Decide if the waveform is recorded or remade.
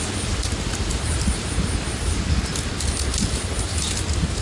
recorded